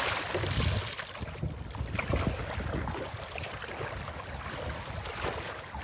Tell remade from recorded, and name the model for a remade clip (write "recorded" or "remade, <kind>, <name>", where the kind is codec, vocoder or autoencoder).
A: recorded